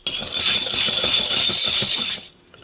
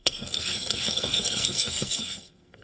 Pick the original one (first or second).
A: first